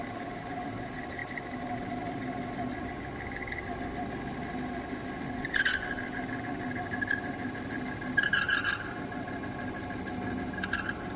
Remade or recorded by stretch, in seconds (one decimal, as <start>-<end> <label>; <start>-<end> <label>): 0.0-11.2 recorded